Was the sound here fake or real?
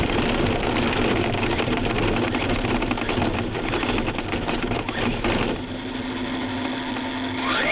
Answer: real